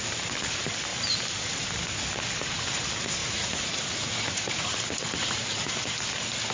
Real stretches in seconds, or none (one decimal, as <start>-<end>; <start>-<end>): 0.0-3.2; 4.7-5.2; 5.8-6.5